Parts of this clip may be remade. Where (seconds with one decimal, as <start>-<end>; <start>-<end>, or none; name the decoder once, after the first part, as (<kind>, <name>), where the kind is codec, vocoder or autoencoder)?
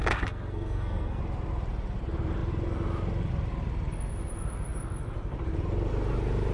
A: 0.0-1.2 (codec, SNAC)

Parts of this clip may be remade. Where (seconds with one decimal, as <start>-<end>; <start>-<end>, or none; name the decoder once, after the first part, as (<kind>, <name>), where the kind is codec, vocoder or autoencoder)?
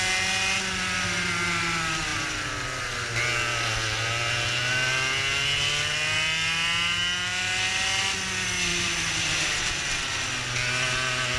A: 8.7-9.7 (vocoder, BigVGAN v2)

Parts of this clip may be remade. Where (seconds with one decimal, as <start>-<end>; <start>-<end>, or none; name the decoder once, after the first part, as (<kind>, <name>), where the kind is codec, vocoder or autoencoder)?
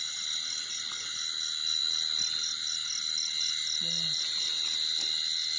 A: none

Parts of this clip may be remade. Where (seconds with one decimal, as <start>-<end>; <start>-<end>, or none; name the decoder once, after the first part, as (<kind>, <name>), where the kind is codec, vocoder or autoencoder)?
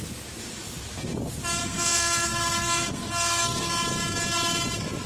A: 1.6-3.7 (codec, SNAC)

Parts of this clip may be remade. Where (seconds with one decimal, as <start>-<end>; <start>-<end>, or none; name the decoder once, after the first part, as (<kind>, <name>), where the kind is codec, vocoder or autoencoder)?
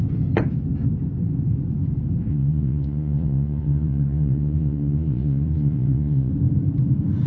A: 2.3-6.3 (vocoder, Vocos)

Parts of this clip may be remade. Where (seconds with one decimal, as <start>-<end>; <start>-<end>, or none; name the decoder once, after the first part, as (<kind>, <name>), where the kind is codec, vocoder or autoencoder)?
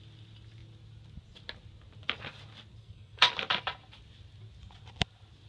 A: 2.8-3.3 (codec, SNAC)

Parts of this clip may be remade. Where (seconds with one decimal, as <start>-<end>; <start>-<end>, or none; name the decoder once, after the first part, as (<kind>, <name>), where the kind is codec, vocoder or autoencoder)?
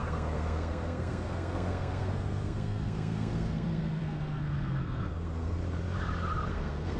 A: 0.0-5.6 (codec, SNAC); 6.5-7.0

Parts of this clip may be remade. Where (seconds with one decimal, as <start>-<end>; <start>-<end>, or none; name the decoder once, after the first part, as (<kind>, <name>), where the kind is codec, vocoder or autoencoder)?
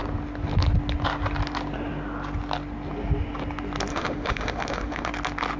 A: 3.9-5.1 (autoencoder, DAC-VAE)